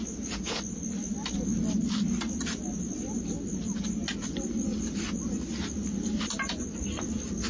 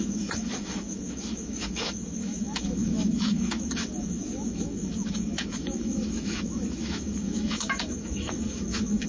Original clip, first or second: first